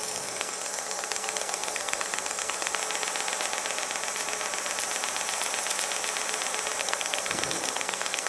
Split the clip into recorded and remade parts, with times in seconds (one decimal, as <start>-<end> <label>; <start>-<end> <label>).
0.0-2.8 remade; 2.8-6.8 recorded; 6.8-8.3 remade